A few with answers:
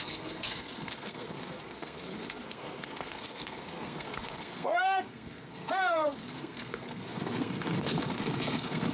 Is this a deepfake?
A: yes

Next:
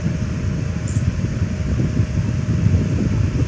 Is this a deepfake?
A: no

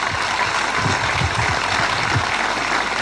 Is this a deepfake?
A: no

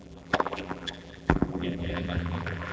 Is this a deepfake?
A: yes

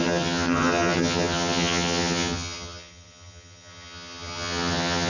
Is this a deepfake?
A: yes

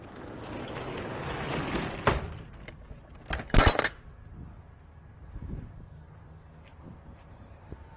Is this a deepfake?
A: no